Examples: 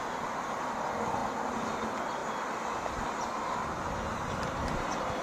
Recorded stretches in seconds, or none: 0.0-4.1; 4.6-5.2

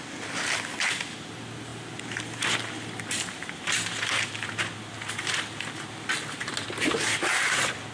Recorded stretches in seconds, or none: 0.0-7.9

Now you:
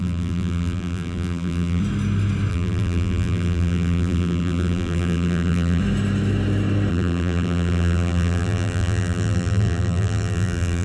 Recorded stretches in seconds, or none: 1.8-2.5; 5.8-6.9

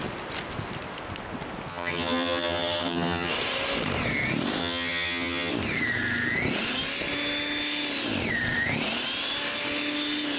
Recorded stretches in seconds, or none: 0.0-1.7; 3.3-4.6; 5.5-10.4

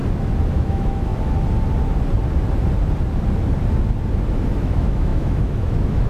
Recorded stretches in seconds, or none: 0.0-0.5; 1.1-4.6

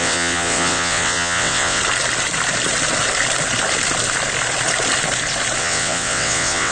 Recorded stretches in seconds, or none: 1.8-5.6

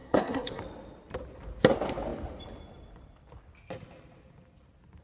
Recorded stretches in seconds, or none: 0.6-5.0